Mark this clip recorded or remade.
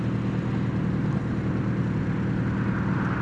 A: recorded